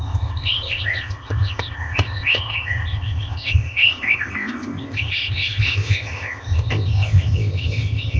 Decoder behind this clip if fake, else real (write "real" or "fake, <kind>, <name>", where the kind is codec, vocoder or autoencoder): fake, codec, ZipCodec